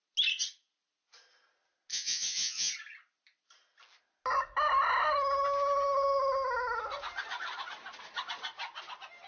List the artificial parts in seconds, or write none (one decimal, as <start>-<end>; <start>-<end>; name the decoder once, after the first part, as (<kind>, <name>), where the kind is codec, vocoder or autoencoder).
1.9-2.7 (vocoder, Vocos)